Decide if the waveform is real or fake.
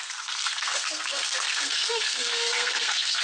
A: fake